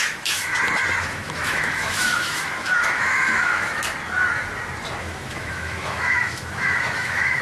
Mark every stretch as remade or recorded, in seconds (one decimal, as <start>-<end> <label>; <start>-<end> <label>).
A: 0.0-0.5 remade; 0.5-1.0 recorded; 1.0-3.8 remade; 3.8-5.0 recorded; 5.0-7.4 remade

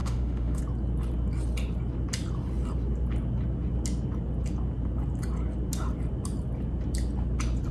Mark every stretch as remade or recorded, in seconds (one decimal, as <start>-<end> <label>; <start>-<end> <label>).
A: 0.0-0.6 remade; 0.6-7.7 recorded

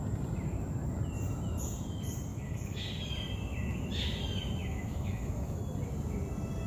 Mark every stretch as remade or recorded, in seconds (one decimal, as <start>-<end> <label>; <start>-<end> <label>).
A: 0.0-2.3 recorded; 2.3-2.8 remade; 2.8-4.6 recorded; 4.6-5.6 remade; 5.6-6.7 recorded